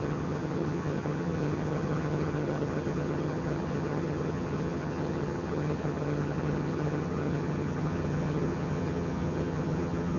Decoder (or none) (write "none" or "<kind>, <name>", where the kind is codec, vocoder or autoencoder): vocoder, HiFi-GAN